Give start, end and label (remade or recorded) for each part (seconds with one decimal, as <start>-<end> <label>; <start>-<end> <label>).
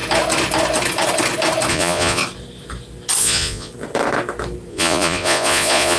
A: 0.0-1.7 recorded; 1.7-2.2 remade; 2.2-3.2 recorded; 3.2-3.7 remade; 3.7-4.7 recorded; 4.7-6.0 remade